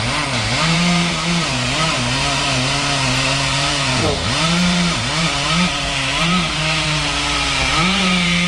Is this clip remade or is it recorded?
remade